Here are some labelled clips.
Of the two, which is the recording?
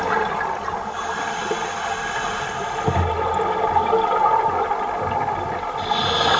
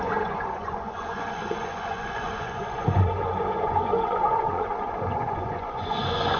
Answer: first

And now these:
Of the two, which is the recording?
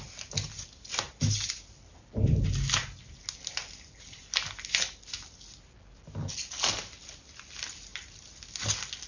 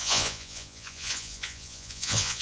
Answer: first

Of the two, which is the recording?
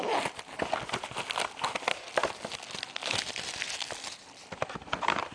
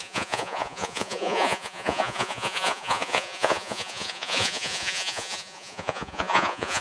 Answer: first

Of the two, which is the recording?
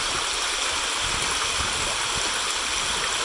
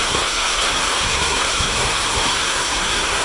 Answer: first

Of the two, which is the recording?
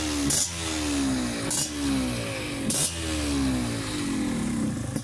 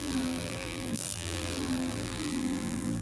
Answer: first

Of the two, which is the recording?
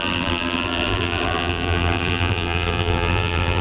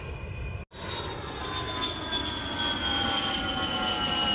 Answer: second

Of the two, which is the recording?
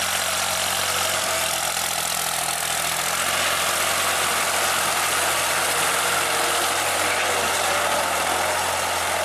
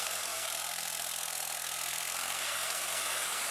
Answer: first